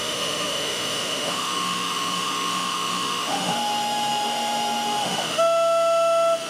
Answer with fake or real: fake